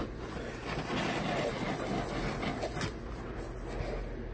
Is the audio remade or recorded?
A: recorded